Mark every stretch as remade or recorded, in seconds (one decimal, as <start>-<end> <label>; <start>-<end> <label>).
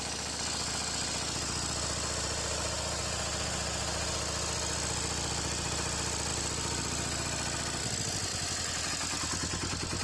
0.0-10.0 recorded